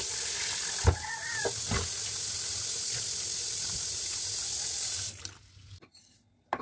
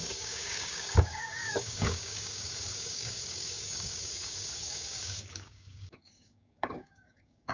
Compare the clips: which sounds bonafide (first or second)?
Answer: first